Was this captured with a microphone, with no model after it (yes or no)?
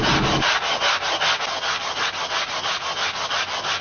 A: yes